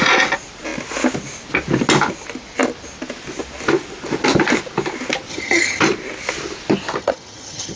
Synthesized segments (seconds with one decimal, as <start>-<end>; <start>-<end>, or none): 5.3-5.8; 7.0-7.8